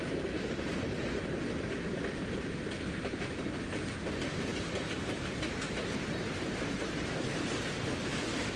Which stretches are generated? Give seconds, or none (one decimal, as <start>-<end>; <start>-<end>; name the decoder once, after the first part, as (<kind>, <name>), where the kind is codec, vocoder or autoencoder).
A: none